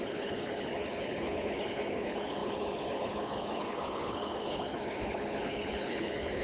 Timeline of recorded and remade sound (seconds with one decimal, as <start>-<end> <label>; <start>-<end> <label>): 0.0-6.4 remade